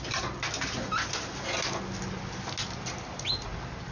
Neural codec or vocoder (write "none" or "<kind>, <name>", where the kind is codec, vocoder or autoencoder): none